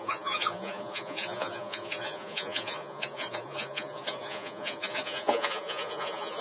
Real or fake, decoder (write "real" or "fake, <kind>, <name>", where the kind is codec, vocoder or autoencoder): fake, vocoder, Vocos